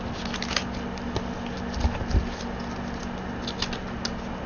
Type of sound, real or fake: real